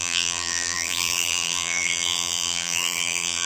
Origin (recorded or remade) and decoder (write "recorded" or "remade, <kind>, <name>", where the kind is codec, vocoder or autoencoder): remade, vocoder, BigVGAN v2